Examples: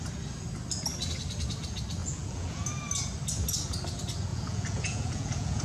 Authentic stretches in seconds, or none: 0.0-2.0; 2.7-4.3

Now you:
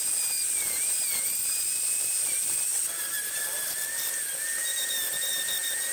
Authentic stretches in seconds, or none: 0.0-5.9

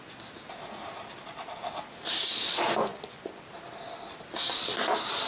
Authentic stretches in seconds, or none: 0.0-2.9; 3.4-5.3